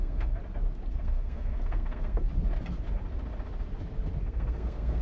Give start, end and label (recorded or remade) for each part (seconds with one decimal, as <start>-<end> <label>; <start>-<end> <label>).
0.0-0.4 remade; 0.4-0.9 recorded; 0.9-2.3 remade; 2.3-4.2 recorded; 4.2-5.0 remade